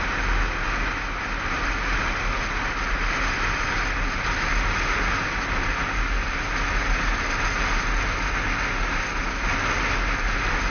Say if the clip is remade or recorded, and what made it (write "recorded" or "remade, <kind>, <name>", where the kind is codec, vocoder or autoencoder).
recorded